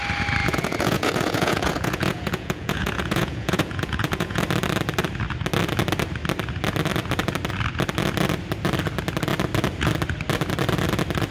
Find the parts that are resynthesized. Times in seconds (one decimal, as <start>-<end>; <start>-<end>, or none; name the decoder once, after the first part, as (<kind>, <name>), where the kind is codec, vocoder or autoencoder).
0.4-4.4 (vocoder, Vocos)